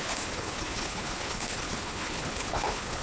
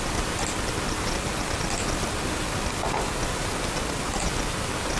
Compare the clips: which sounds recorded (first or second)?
second